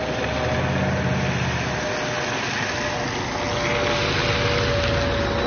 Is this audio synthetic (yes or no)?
no